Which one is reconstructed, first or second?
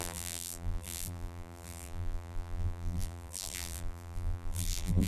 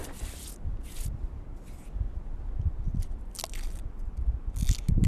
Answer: first